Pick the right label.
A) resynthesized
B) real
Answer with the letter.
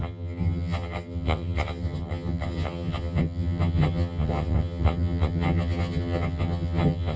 A